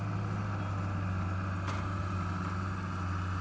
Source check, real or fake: real